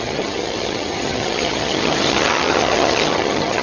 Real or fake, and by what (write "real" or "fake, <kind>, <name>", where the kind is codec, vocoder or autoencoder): fake, vocoder, HiFi-GAN